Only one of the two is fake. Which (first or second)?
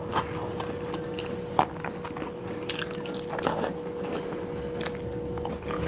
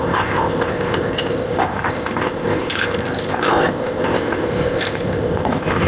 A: second